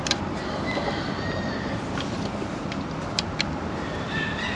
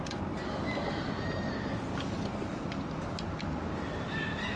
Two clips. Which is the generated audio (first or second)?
first